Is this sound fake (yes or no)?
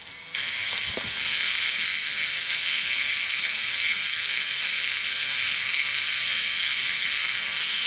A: yes